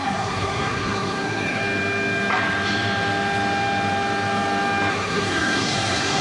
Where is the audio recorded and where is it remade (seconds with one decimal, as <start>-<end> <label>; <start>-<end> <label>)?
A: 0.0-1.6 remade; 1.6-4.9 recorded; 4.9-6.2 remade